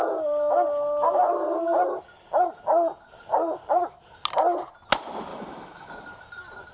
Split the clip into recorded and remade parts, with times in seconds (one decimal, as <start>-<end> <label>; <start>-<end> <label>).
0.0-5.3 recorded; 5.3-5.9 remade; 5.9-6.7 recorded